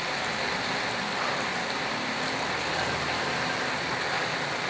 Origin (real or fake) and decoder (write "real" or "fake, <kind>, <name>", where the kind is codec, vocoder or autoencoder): real